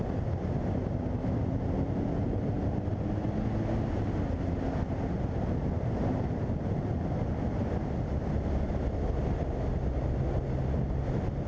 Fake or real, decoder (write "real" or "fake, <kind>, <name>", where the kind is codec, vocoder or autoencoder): real